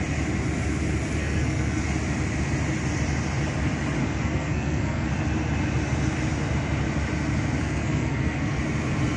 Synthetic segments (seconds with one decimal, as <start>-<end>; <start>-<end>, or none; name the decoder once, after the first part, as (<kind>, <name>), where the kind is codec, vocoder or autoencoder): 1.2-1.8 (codec, SNAC); 4.0-5.1; 7.6-8.6